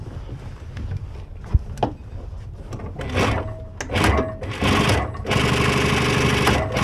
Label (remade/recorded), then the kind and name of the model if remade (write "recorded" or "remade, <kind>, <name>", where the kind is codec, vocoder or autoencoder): recorded